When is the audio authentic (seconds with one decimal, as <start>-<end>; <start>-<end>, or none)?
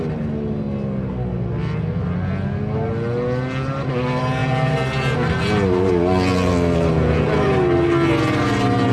0.0-8.9